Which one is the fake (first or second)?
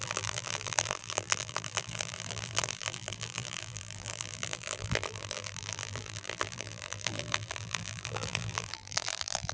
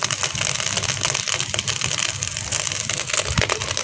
first